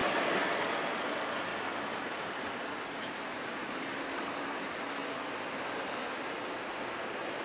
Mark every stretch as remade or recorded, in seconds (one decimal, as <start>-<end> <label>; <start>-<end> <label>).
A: 0.0-7.4 recorded